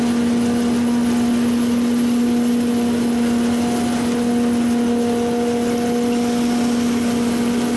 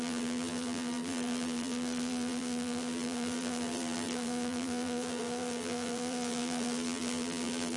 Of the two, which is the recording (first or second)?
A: first